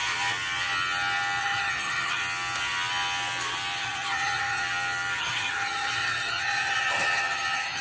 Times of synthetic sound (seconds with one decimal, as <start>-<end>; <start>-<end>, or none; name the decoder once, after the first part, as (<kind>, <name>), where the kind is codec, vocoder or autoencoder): 1.4-2.2 (vocoder, HiFi-GAN); 3.8-4.6; 5.2-7.8